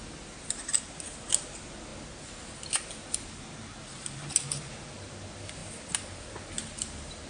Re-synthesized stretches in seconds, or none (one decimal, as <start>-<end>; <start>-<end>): none

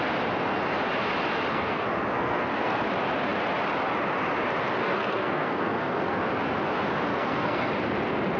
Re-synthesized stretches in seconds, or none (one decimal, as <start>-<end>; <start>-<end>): 1.5-2.8; 4.8-6.2; 7.1-7.7

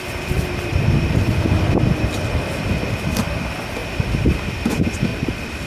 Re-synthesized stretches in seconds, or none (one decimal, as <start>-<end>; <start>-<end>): 0.7-2.6; 5.1-5.7

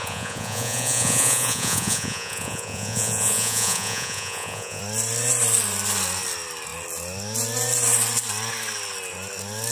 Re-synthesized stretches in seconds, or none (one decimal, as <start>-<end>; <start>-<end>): 0.0-4.8